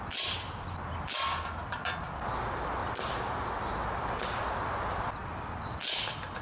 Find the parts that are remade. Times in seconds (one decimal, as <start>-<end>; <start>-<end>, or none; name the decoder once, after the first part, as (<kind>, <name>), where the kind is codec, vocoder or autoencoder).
none